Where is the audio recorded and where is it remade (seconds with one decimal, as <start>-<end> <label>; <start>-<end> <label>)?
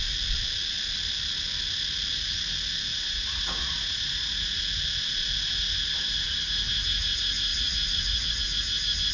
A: 0.0-2.9 recorded; 2.9-4.6 remade; 4.6-7.5 recorded; 7.5-8.4 remade; 8.4-9.1 recorded